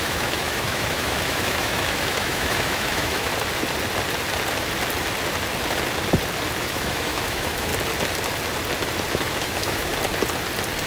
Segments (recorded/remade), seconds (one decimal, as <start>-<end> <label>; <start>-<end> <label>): 0.0-3.3 remade; 3.3-6.6 recorded; 6.6-7.7 remade; 7.7-9.1 recorded; 9.1-9.9 remade; 9.9-10.9 recorded